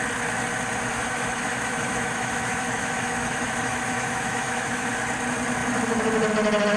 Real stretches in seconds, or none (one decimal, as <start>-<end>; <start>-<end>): 0.0-0.9; 4.9-6.8